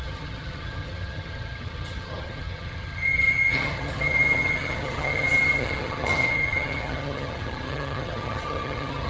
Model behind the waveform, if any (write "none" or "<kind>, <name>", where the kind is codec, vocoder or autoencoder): vocoder, HiFi-GAN